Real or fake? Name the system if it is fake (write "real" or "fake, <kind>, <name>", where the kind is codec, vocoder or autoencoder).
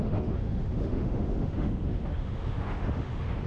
fake, autoencoder, DAC-VAE